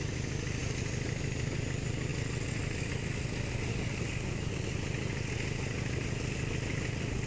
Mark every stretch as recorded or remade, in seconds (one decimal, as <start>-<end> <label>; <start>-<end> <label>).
0.0-3.7 recorded; 3.7-4.5 remade; 4.5-7.3 recorded